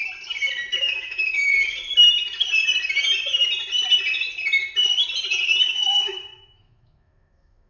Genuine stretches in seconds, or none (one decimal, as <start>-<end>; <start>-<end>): 0.0-0.8; 1.5-5.6